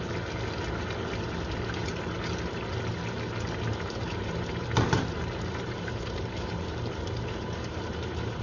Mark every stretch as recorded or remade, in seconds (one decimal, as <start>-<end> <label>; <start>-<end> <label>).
0.0-3.7 recorded; 3.7-8.4 remade